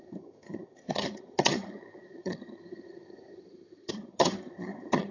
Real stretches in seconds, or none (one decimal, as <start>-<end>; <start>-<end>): none